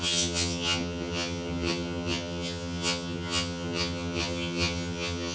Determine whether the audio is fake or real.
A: fake